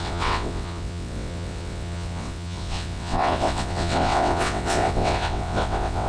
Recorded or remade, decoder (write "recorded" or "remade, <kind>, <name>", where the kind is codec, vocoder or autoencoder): remade, vocoder, WaveNeXt